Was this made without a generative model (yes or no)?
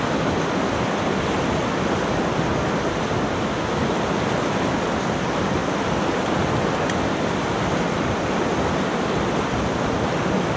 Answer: yes